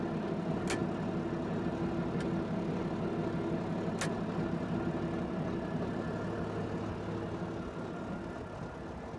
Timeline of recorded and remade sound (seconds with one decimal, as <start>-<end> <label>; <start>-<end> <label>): 0.0-9.2 recorded